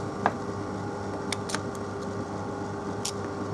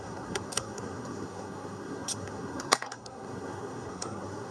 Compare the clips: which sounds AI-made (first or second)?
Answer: second